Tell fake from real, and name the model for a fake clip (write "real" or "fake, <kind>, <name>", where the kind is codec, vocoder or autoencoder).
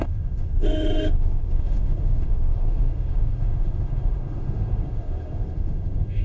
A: fake, autoencoder, DAC-VAE